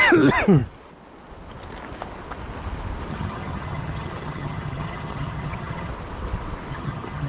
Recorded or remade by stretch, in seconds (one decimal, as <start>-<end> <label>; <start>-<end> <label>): 0.0-3.1 recorded; 3.1-5.9 remade; 5.9-6.7 recorded; 6.7-7.3 remade